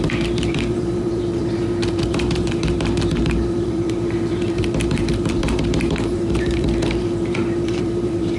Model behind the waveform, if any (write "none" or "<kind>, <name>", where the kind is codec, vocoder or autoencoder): vocoder, BigVGAN v2